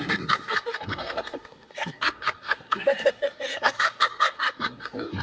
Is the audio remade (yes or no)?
yes